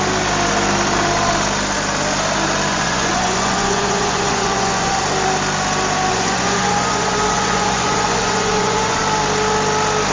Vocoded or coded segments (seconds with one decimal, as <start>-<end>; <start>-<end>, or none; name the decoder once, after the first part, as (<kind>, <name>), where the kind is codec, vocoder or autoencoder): 2.7-5.0 (vocoder, Vocos); 6.1-9.0